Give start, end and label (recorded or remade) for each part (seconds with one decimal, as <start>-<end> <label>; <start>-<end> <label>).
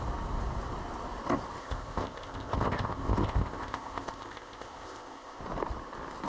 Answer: 0.0-1.6 recorded; 1.6-5.4 remade; 5.4-6.3 recorded